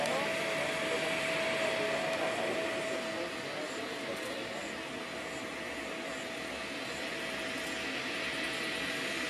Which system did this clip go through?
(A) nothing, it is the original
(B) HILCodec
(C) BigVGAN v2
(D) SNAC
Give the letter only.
A